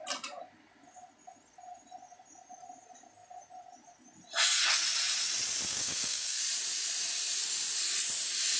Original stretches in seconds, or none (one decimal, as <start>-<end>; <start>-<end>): 0.0-5.7; 6.4-8.6